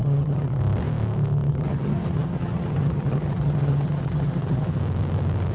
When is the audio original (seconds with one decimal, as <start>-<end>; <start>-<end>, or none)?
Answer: 0.6-1.5; 4.8-5.5